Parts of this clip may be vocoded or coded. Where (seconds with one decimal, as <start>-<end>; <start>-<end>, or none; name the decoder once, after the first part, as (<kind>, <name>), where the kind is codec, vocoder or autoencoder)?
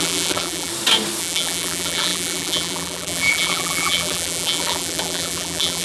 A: 0.0-0.7 (vocoder, BigVGAN v2); 1.2-5.8